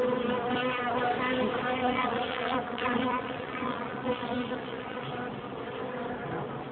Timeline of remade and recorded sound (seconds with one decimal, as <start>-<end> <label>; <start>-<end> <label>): 0.0-1.8 recorded; 1.8-5.0 remade; 5.0-6.7 recorded